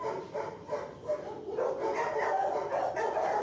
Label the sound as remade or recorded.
recorded